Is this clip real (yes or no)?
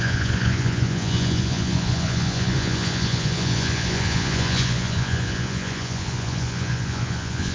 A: no